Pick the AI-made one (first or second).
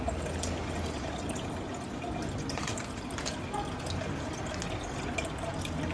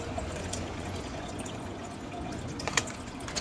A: second